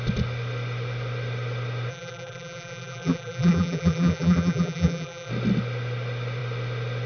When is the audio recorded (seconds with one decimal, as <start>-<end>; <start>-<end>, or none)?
0.0-1.9; 5.3-7.1